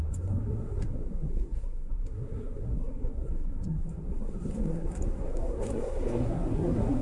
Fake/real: fake